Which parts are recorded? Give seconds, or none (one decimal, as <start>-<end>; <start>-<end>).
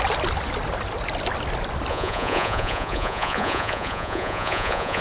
0.0-1.9